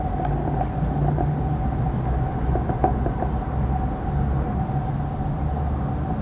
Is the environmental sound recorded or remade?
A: recorded